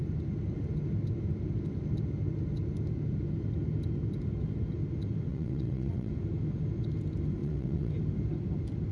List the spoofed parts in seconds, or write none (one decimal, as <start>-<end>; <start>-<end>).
5.3-6.1; 7.4-7.9